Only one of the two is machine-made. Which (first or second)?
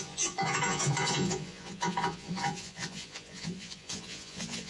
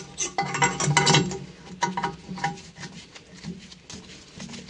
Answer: first